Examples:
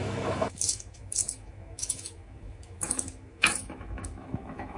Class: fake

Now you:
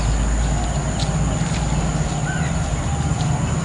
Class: real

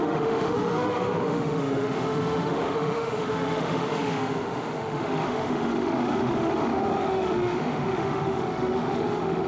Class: fake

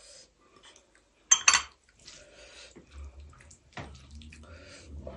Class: real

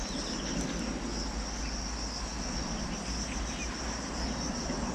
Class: real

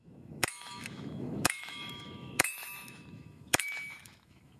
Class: fake